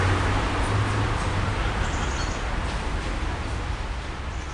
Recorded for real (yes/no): yes